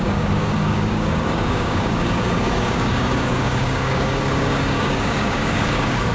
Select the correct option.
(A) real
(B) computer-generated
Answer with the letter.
B